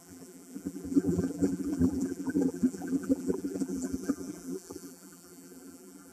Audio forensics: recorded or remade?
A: remade